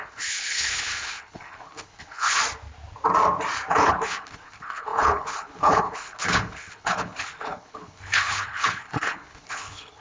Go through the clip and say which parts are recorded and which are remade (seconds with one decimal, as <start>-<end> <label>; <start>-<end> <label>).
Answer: 0.0-2.4 remade; 2.4-3.7 recorded; 3.7-10.0 remade